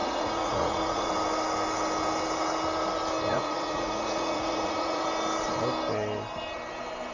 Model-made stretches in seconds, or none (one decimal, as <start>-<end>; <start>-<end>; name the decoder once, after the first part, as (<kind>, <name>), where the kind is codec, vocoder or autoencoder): 0.0-1.1 (vocoder, Vocos); 3.3-5.0